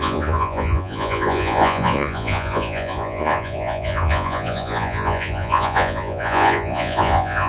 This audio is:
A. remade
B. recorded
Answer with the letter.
A